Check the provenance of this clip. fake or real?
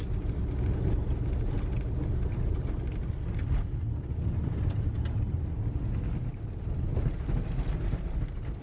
real